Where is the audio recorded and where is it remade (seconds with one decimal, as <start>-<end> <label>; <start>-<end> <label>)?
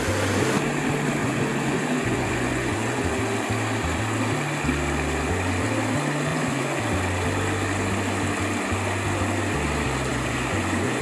0.0-1.2 recorded; 1.2-3.1 remade; 3.1-6.3 recorded; 6.3-6.8 remade; 6.8-10.1 recorded; 10.1-11.0 remade